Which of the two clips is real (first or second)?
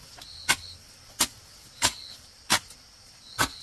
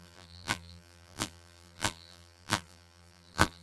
first